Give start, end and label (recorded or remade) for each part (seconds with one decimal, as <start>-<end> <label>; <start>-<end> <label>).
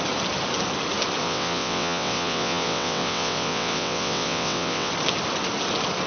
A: 0.0-1.2 recorded; 1.2-4.9 remade; 4.9-6.1 recorded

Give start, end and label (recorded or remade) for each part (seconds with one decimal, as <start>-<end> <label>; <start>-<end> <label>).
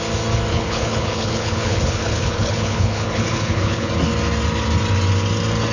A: 0.0-0.5 recorded; 0.5-3.9 remade; 3.9-5.7 recorded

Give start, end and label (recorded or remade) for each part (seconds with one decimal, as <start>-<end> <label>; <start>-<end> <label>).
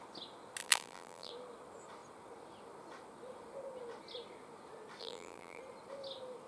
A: 0.0-0.6 recorded; 0.6-1.3 remade; 1.3-5.0 recorded; 5.0-5.6 remade; 5.6-6.5 recorded